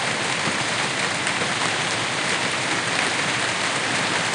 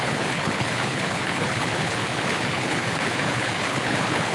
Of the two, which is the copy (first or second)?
second